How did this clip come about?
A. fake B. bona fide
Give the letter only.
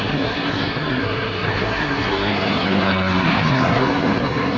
A